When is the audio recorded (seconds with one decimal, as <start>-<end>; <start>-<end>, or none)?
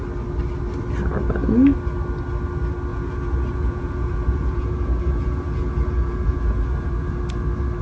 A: 0.0-2.9; 7.2-7.8